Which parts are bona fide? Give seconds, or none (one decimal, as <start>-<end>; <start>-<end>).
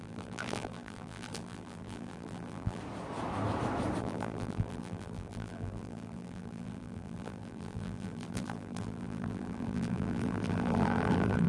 2.8-4.0